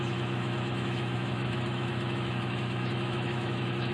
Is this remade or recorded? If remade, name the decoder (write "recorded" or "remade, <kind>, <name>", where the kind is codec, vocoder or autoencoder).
remade, autoencoder, DAC-VAE